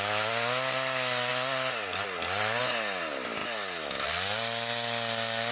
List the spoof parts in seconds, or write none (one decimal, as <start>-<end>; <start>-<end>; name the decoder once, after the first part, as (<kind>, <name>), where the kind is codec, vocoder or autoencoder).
none